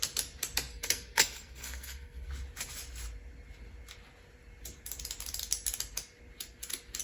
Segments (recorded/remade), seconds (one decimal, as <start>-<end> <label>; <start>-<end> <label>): 0.0-0.7 recorded; 0.7-2.3 remade; 2.3-7.0 recorded